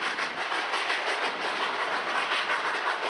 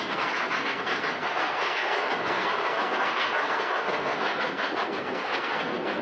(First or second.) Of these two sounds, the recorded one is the first